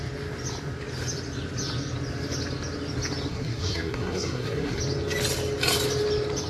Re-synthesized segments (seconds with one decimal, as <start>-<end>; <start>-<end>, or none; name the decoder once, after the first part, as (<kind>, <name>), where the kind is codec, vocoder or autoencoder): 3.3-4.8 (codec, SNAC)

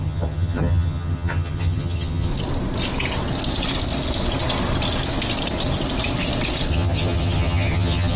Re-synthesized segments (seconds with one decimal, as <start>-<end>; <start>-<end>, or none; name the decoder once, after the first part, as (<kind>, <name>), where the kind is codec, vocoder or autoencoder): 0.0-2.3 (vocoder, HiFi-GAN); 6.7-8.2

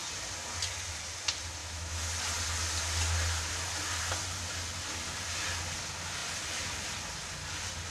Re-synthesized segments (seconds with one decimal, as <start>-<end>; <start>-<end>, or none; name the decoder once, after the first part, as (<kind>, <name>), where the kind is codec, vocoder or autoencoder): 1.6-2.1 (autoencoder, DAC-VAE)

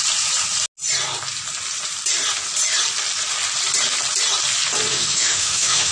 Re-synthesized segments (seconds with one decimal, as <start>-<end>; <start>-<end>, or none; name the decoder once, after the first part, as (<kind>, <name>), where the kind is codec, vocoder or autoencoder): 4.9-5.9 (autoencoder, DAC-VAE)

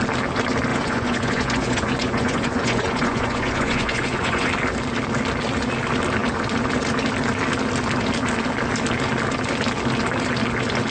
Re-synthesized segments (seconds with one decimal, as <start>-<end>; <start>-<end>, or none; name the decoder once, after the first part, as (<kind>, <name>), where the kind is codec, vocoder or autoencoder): 0.7-4.5 (vocoder, Vocos)

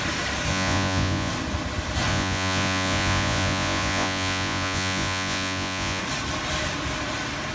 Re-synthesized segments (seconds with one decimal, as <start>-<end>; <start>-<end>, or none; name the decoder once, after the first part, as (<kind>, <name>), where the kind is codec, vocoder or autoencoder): 0.5-1.3 (vocoder, Vocos); 2.1-6.0

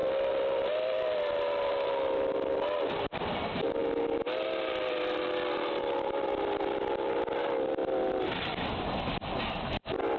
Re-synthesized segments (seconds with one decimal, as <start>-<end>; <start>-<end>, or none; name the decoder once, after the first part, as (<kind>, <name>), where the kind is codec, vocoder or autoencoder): none